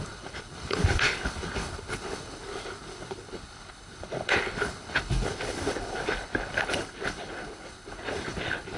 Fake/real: fake